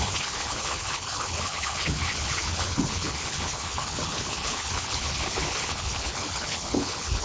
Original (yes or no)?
no